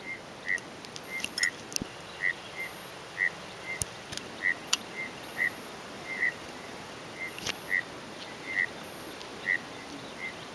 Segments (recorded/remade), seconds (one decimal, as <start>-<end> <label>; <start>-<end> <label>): 0.0-5.3 recorded; 5.3-6.9 remade; 6.9-10.5 recorded